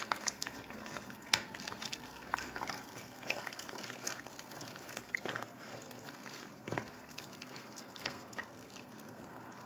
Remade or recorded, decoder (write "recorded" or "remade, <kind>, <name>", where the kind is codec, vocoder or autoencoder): remade, codec, SNAC